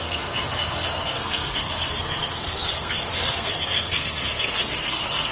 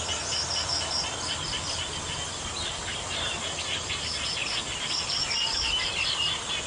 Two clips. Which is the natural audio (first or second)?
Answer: second